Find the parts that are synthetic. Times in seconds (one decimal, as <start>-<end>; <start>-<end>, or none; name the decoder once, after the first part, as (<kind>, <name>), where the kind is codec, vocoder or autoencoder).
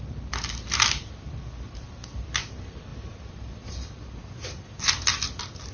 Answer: none